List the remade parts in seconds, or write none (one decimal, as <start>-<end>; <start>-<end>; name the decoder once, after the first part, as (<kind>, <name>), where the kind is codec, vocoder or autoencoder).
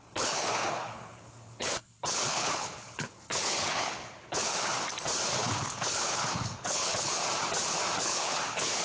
0.0-4.7 (codec, HILCodec); 5.3-7.2; 8.0-8.8